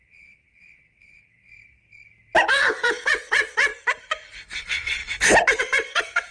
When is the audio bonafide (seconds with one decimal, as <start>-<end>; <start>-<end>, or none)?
1.5-2.5; 3.7-4.6; 5.0-5.6